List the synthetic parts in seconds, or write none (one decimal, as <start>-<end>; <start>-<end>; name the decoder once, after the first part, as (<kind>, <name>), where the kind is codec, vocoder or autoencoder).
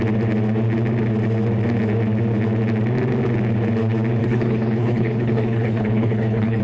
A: 4.2-6.6 (codec, HILCodec)